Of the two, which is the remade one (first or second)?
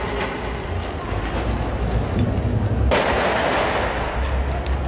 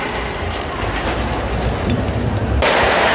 second